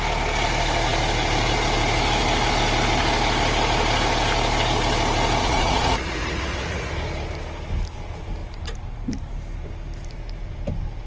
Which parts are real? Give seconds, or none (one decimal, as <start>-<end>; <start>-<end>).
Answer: 0.0-5.4; 6.9-11.1